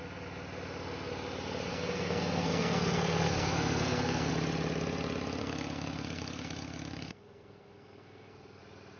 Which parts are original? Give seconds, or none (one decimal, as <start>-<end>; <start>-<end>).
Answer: 0.0-1.7; 4.3-5.4; 8.6-9.0